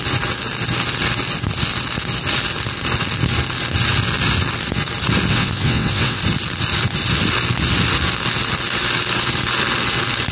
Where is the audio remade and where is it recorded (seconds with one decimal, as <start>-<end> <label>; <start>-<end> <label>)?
0.0-5.3 recorded; 5.3-6.2 remade; 6.2-10.3 recorded